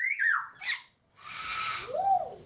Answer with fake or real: real